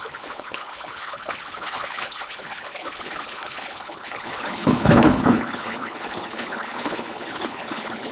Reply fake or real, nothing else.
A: fake